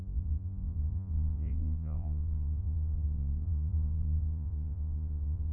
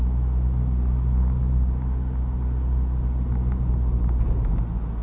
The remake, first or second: first